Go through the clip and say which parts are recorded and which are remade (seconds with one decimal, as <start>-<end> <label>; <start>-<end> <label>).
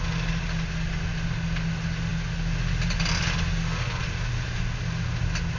0.0-5.6 recorded